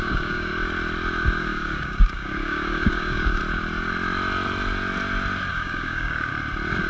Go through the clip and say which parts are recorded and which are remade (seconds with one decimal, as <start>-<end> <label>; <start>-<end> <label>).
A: 0.0-0.5 remade; 0.5-1.4 recorded; 1.4-3.4 remade; 3.4-5.5 recorded; 5.5-6.3 remade; 6.3-6.9 recorded